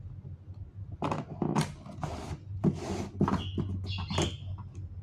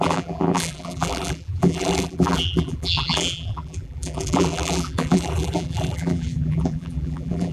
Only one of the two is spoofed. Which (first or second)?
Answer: second